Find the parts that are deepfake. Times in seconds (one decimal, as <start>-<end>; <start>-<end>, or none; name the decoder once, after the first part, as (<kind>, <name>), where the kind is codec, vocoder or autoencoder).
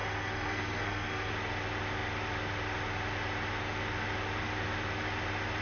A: 0.0-1.3 (codec, SNAC)